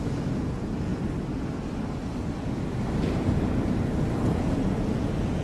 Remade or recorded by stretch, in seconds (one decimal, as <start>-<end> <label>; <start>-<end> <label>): 0.0-0.9 remade; 0.9-4.1 recorded; 4.1-5.4 remade

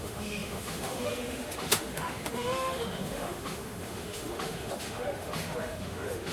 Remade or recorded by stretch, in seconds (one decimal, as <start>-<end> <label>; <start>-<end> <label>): 0.0-6.3 remade

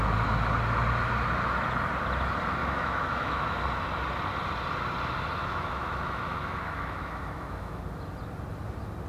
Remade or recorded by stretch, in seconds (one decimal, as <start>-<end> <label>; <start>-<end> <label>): 0.0-2.6 recorded; 2.6-3.6 remade; 3.6-5.4 recorded; 5.4-7.8 remade; 7.8-9.1 recorded

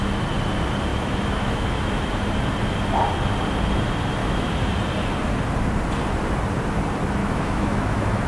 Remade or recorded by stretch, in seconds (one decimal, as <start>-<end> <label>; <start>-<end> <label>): 0.0-0.9 recorded; 0.9-2.1 remade; 2.1-4.2 recorded; 4.2-4.7 remade; 4.7-7.2 recorded; 7.2-8.3 remade

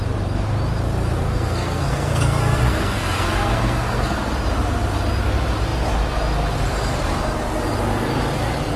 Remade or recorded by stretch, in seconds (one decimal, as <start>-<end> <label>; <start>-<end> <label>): 0.0-1.3 recorded; 1.3-4.2 remade; 4.2-8.8 recorded

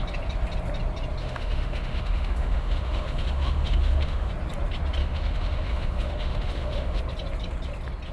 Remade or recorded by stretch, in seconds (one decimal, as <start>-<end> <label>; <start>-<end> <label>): 0.0-1.2 recorded; 1.2-4.3 remade; 4.3-5.0 recorded; 5.0-7.0 remade; 7.0-8.1 recorded